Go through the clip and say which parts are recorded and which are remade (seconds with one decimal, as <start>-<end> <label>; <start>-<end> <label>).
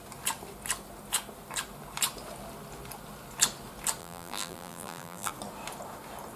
0.0-4.0 recorded; 4.0-5.3 remade; 5.3-6.4 recorded